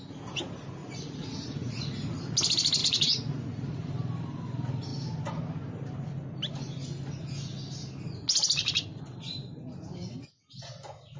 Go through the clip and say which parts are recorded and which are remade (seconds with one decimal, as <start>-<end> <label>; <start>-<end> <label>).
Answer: 0.0-0.8 recorded; 0.8-2.2 remade; 2.2-2.8 recorded; 2.8-3.9 remade; 3.9-11.2 recorded